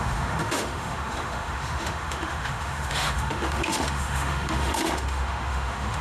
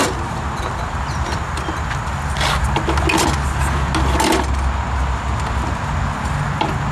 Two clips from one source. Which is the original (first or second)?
second